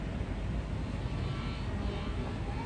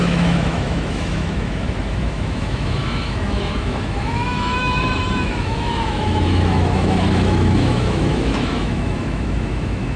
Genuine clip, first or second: first